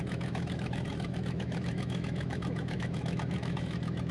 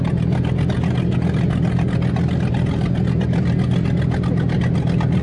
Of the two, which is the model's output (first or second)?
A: first